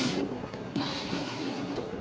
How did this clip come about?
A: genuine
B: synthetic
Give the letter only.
B